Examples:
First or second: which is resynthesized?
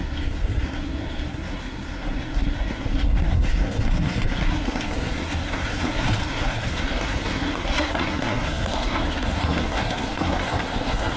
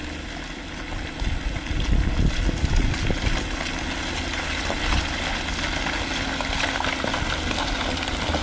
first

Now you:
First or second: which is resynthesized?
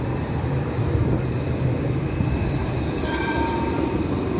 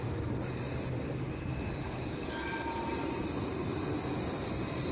first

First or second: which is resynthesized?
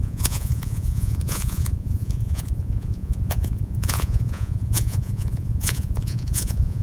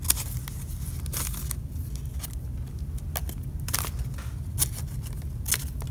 first